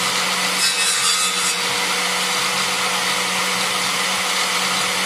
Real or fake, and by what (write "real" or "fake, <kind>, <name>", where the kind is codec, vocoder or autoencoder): real